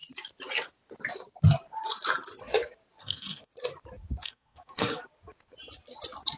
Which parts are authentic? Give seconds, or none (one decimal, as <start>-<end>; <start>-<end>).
0.0-3.0; 3.5-4.2; 5.0-6.4